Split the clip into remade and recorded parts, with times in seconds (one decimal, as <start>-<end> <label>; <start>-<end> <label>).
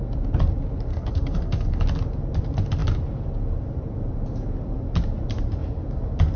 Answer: 0.0-0.9 recorded; 0.9-1.8 remade; 1.8-6.4 recorded